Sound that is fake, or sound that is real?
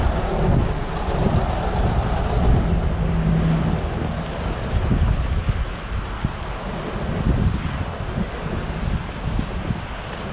real